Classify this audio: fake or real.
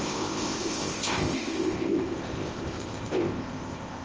fake